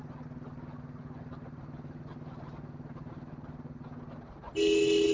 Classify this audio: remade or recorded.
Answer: recorded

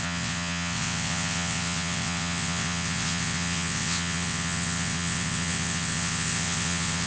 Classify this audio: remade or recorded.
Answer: remade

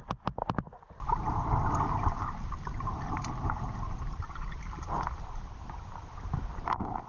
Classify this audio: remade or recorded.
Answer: recorded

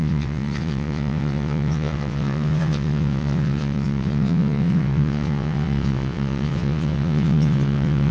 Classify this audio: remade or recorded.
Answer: remade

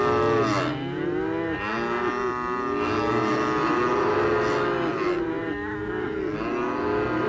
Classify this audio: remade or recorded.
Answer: recorded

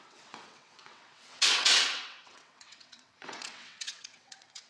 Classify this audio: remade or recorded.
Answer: remade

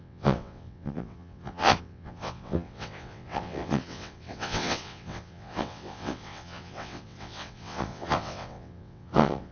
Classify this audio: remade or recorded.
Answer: remade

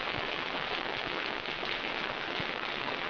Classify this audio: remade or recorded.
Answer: remade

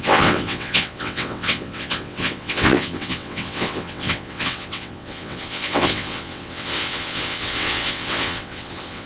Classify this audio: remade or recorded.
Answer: remade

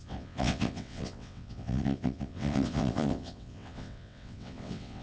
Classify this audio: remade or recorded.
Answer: remade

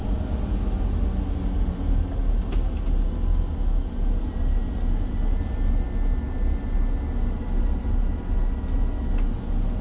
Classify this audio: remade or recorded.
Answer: recorded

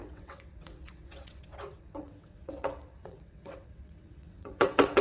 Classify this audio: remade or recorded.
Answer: remade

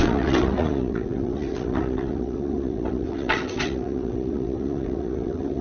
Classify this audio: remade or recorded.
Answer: remade